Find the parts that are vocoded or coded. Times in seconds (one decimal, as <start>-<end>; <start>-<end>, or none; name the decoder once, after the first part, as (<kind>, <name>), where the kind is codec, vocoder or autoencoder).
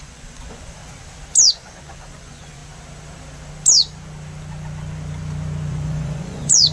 0.0-0.8 (vocoder, Vocos); 1.5-2.6; 5.7-6.7